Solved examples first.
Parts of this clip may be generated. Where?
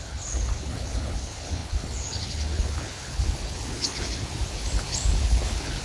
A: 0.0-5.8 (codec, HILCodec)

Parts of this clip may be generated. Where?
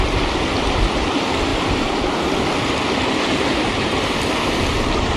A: none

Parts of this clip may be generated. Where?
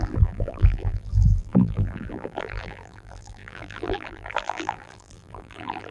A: 0.0-5.9 (vocoder, BigVGAN v2)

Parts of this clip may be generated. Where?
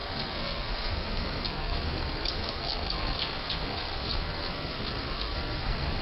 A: 0.0-6.0 (codec, SNAC)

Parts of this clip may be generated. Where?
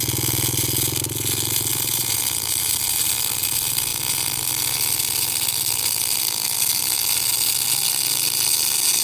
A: 1.7-2.2 (vocoder, BigVGAN v2)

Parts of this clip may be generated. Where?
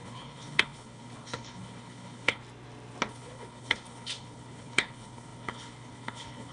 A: 0.0-2.4 (codec, HILCodec); 3.1-6.5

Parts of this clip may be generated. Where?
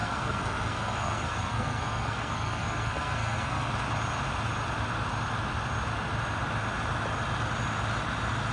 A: 0.0-3.7 (codec, SNAC)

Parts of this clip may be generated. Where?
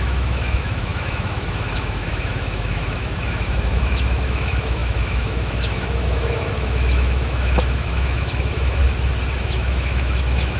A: 0.0-8.8 (autoencoder, DAC-VAE); 9.4-10.6